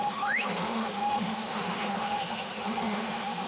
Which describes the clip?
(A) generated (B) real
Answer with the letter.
A